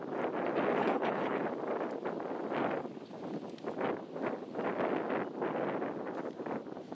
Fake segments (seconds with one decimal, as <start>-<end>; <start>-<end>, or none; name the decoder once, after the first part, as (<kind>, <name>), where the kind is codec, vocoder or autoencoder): 0.8-1.4 (codec, HILCodec)